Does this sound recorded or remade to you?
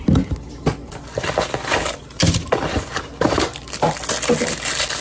recorded